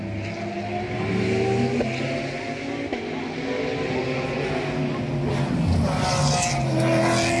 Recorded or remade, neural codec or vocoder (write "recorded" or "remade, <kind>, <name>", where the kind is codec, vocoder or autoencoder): recorded